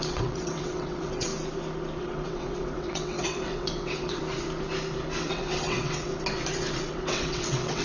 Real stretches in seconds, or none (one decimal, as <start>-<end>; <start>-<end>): 1.3-2.0; 4.2-5.2; 6.1-6.9